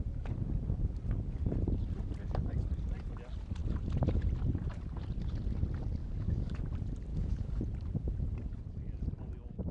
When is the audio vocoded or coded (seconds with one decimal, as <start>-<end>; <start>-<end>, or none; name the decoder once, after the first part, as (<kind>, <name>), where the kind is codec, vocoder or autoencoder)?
6.0-6.6 (codec, DAC); 7.1-7.6